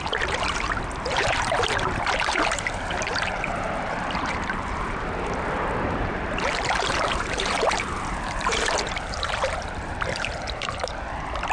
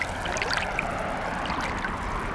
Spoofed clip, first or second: first